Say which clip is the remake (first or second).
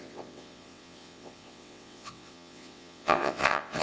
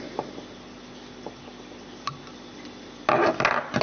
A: first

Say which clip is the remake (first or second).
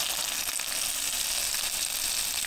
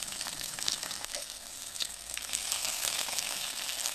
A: second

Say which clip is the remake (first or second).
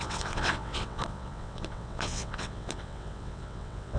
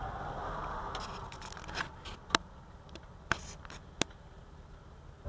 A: first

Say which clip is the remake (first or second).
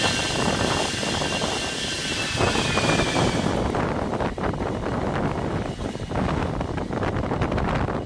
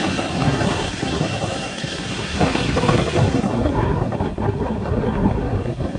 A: second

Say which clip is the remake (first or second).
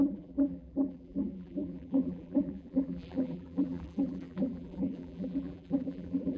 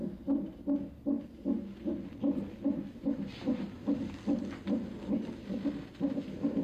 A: first